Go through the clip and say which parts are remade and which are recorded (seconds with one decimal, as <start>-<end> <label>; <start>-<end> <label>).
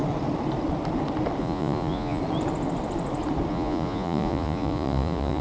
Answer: 0.0-1.4 recorded; 1.4-2.2 remade; 2.2-3.5 recorded; 3.5-5.4 remade